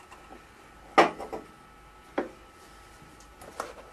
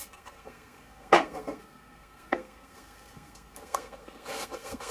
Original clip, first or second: first